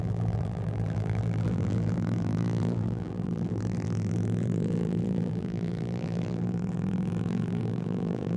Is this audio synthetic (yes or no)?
yes